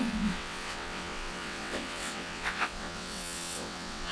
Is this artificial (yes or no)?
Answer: yes